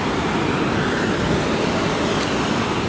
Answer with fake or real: real